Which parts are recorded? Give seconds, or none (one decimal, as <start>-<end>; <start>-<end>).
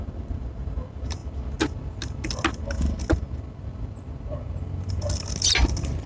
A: 0.0-6.1